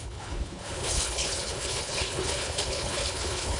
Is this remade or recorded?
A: remade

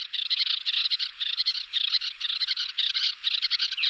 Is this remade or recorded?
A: remade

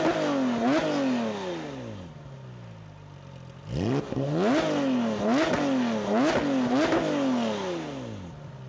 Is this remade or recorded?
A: recorded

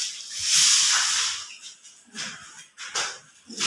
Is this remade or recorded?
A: recorded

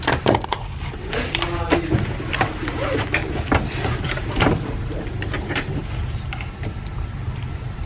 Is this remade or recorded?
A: recorded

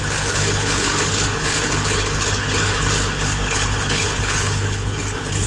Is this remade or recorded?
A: remade